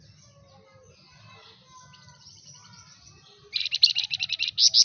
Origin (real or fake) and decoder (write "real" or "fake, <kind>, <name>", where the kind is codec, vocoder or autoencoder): real